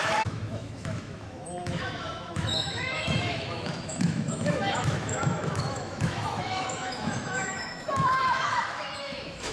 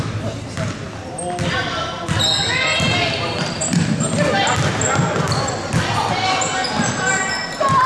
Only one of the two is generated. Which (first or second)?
first